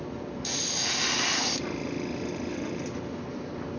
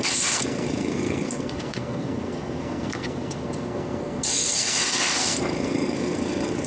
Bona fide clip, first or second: first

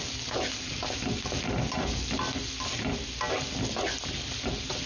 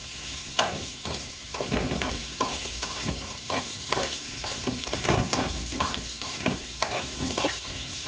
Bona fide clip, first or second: first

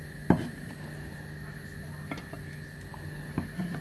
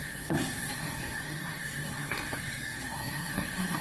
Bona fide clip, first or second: first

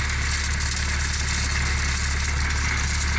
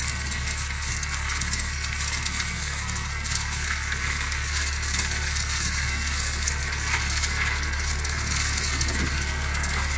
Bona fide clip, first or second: first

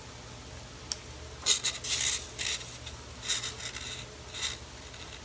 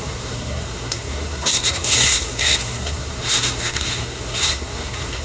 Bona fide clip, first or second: first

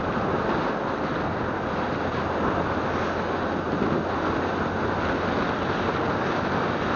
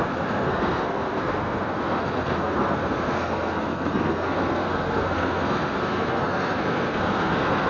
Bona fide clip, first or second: first